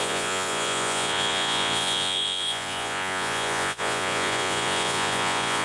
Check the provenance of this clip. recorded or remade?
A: remade